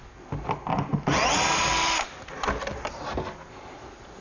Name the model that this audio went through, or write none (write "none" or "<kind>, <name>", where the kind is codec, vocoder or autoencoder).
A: none